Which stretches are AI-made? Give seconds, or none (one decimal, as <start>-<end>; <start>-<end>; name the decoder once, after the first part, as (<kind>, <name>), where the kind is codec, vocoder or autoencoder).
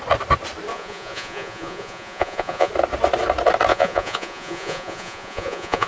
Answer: 0.7-2.7 (vocoder, Vocos); 3.7-5.9